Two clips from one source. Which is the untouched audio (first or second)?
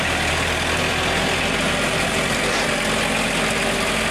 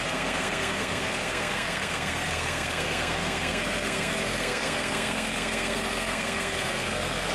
first